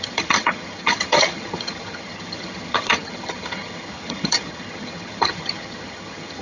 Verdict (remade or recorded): remade